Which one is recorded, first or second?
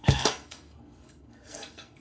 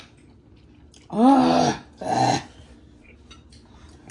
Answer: second